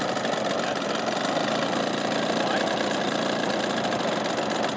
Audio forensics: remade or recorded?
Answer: recorded